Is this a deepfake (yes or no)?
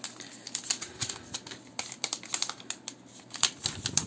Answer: no